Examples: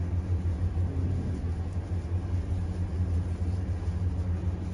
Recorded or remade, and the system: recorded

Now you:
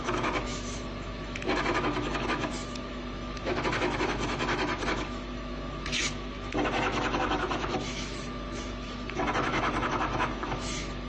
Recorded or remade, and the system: remade, autoencoder, DAC-VAE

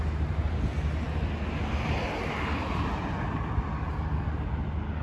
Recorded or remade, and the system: recorded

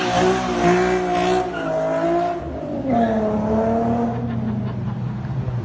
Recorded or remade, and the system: recorded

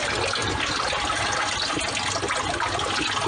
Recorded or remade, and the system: recorded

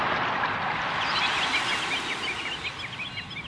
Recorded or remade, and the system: recorded